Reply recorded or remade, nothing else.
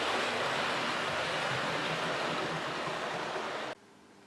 recorded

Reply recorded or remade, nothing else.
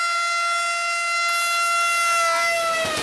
recorded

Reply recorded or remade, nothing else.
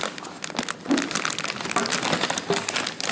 recorded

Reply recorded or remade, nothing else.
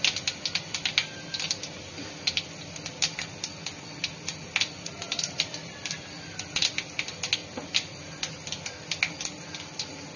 recorded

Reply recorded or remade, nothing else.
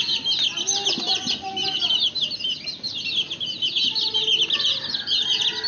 recorded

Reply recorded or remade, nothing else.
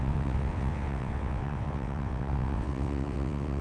remade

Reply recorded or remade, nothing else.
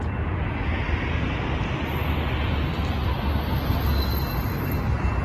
recorded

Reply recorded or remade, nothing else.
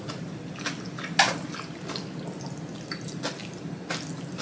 recorded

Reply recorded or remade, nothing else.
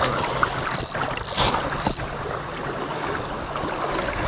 recorded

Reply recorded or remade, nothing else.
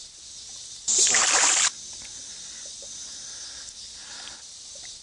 recorded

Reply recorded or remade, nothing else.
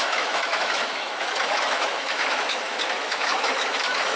remade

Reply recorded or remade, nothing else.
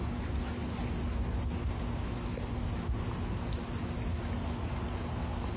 recorded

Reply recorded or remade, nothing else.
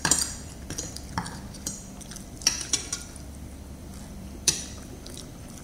remade